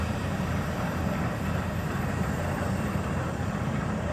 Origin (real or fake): fake